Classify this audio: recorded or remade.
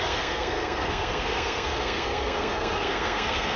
remade